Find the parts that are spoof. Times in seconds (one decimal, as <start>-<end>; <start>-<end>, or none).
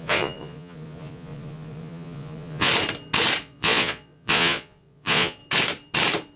0.0-2.7; 3.4-5.4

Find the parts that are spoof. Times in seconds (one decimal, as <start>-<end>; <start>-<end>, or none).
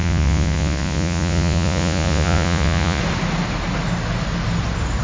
0.0-3.0